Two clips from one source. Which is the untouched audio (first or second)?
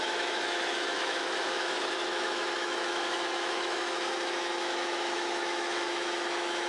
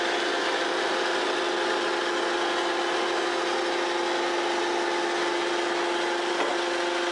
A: second